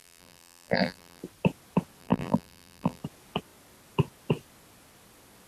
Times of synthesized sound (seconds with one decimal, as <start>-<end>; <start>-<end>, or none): 0.0-1.2; 2.0-3.0